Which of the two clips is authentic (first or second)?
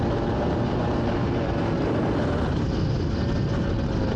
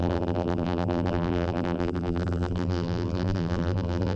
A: first